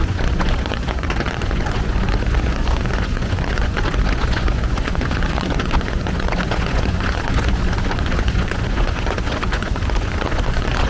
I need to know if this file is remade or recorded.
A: remade